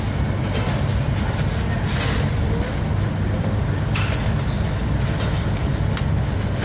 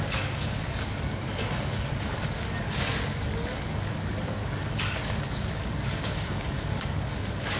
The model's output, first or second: second